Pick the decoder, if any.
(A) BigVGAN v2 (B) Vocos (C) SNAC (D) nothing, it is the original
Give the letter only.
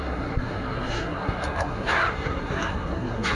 C